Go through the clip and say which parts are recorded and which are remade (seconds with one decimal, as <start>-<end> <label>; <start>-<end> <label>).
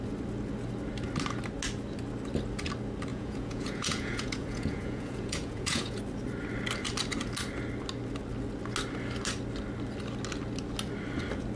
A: 0.0-3.1 recorded; 3.1-6.0 remade; 6.0-11.6 recorded